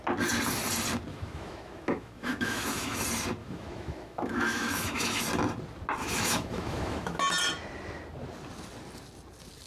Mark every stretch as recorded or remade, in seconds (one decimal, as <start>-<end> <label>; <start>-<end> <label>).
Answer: 0.0-1.1 recorded; 1.1-3.0 remade; 3.0-3.4 recorded; 3.4-5.2 remade; 5.2-6.0 recorded; 6.0-7.2 remade; 7.2-9.7 recorded